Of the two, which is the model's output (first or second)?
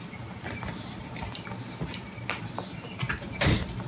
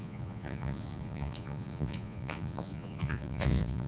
second